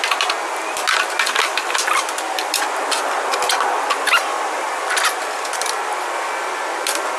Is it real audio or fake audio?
real